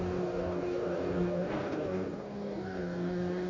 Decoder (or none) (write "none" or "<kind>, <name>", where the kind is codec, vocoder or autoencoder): codec, DAC